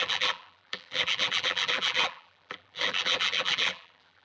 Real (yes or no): no